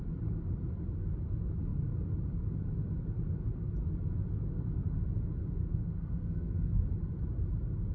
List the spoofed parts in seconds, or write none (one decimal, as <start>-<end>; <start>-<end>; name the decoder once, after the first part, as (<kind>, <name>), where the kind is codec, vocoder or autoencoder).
5.4-6.8 (codec, SNAC)

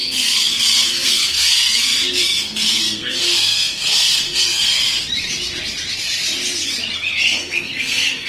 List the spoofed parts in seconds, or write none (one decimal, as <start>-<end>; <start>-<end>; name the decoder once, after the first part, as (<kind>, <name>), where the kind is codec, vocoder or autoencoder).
0.0-4.8 (codec, SNAC); 7.1-8.3